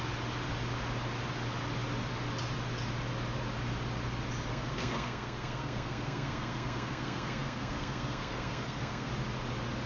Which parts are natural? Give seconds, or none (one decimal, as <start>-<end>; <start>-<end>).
0.0-4.5; 9.1-9.9